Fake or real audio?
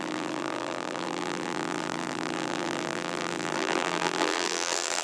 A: fake